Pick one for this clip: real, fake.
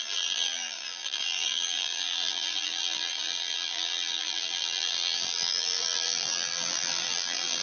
fake